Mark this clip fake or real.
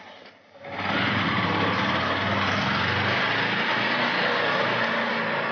real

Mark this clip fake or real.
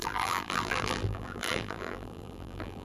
fake